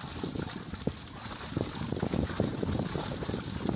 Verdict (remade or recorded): recorded